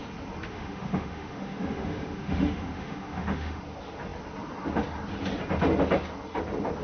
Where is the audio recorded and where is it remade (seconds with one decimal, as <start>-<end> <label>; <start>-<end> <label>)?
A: 0.0-0.5 recorded; 0.5-3.6 remade; 3.6-6.8 recorded